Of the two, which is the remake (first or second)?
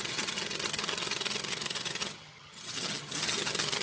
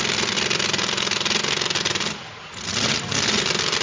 first